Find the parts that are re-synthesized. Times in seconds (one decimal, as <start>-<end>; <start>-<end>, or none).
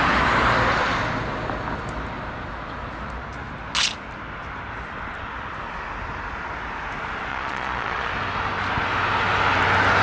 7.3-8.1